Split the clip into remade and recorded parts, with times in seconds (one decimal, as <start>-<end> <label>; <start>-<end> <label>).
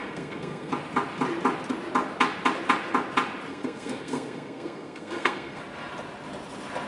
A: 0.0-0.7 remade; 0.7-3.5 recorded; 3.5-5.6 remade; 5.6-6.9 recorded